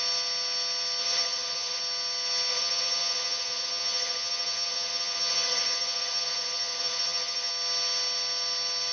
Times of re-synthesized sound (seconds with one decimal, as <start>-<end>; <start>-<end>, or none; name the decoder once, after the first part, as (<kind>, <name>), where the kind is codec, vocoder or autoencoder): 1.0-1.8 (vocoder, HiFi-GAN); 2.5-7.5